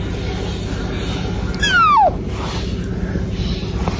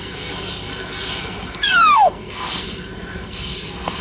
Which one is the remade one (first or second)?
second